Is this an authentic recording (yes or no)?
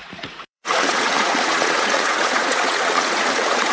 no